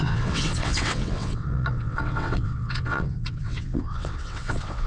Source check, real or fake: fake